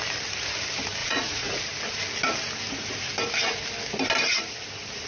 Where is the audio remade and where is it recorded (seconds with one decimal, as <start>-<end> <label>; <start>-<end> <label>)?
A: 0.0-1.0 recorded; 1.0-1.6 remade; 1.6-5.1 recorded

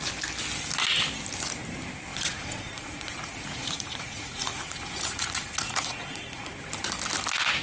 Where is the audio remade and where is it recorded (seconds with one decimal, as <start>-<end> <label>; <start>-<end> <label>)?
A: 0.0-2.1 recorded; 2.1-6.5 remade; 6.5-7.6 recorded

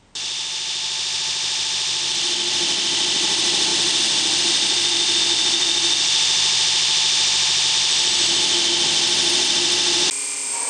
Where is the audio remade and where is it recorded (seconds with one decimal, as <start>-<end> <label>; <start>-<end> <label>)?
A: 0.0-10.7 recorded

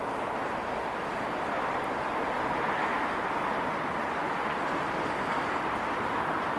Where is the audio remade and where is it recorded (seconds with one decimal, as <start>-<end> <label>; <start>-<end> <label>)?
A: 0.0-4.0 recorded; 4.0-4.8 remade; 4.8-6.6 recorded

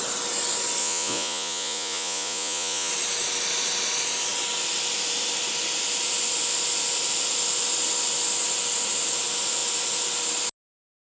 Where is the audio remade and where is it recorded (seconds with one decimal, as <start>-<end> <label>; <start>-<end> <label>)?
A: 0.0-0.8 recorded; 0.8-2.9 remade; 2.9-11.1 recorded